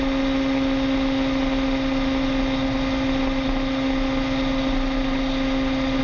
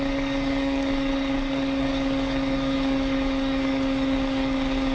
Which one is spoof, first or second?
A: second